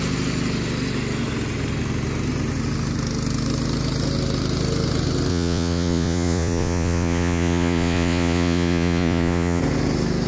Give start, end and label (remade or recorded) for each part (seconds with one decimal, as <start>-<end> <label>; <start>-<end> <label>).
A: 0.0-5.3 recorded; 5.3-9.6 remade; 9.6-10.3 recorded